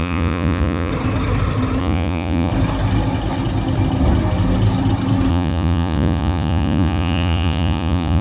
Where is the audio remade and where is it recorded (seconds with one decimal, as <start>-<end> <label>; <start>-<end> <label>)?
0.0-0.9 remade; 0.9-1.8 recorded; 1.8-2.5 remade; 2.5-5.3 recorded; 5.3-8.2 remade

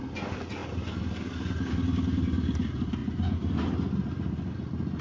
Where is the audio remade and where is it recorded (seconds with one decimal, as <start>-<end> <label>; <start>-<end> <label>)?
0.0-5.0 recorded

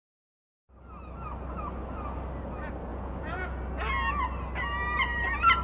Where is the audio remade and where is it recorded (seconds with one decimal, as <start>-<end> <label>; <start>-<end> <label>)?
0.0-2.9 recorded; 2.9-3.6 remade; 3.6-5.6 recorded

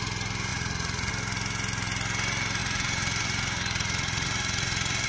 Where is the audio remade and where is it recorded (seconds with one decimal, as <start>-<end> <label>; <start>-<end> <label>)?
0.0-0.5 recorded; 0.5-1.1 remade; 1.1-2.6 recorded; 2.6-5.1 remade